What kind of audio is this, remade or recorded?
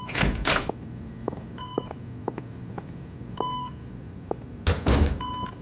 recorded